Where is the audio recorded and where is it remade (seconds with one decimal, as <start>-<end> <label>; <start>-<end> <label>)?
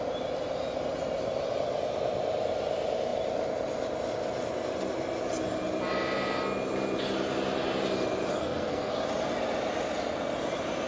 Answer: 0.0-8.3 recorded; 8.3-8.9 remade; 8.9-10.9 recorded